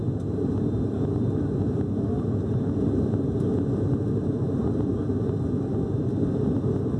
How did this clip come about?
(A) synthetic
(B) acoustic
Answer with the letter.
B